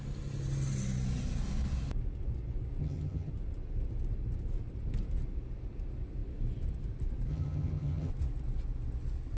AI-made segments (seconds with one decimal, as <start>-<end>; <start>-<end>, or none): 2.8-3.3; 7.3-8.1